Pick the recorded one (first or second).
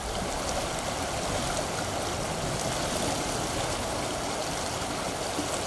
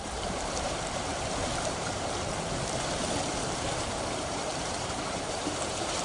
first